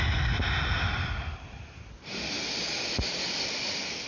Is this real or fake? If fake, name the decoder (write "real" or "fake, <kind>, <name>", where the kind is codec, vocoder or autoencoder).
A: real